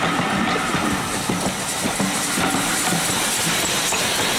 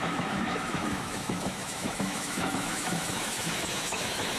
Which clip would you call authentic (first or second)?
first